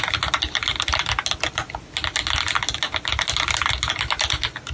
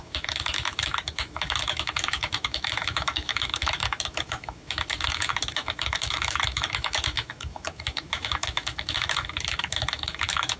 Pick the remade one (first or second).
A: second